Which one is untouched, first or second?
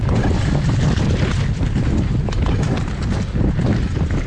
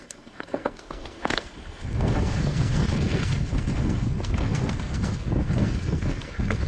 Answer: first